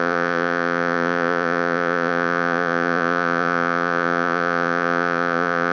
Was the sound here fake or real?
fake